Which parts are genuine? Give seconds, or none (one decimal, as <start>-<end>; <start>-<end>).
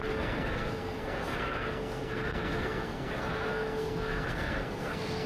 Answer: none